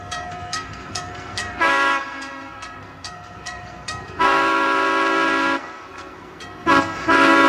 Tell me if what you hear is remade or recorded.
remade